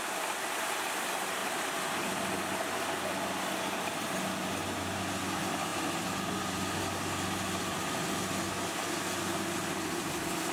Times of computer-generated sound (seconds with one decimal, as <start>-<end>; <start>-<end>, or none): none